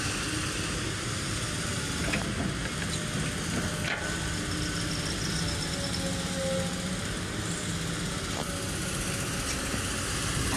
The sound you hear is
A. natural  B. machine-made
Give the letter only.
A